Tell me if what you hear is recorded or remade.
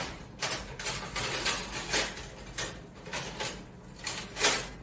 recorded